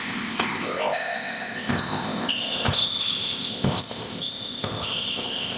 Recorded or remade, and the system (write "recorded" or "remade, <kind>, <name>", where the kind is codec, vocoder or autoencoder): remade, codec, ZipCodec